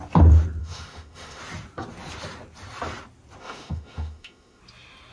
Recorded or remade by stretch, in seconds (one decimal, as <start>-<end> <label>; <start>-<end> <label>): 0.0-0.6 recorded; 0.6-1.4 remade; 1.4-3.4 recorded; 3.4-4.6 remade; 4.6-5.1 recorded